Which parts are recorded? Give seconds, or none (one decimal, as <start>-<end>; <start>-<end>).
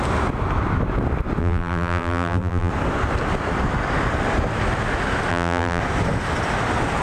0.0-1.4; 2.7-5.3; 5.8-7.0